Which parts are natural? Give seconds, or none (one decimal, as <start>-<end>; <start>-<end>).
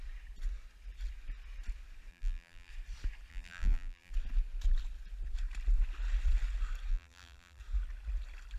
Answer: 0.0-2.1; 2.7-3.3; 4.1-6.9; 7.6-8.6